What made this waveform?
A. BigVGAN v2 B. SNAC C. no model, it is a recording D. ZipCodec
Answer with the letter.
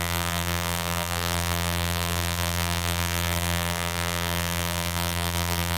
A